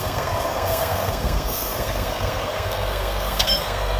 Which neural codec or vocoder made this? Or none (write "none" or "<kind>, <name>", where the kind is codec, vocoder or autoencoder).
codec, SNAC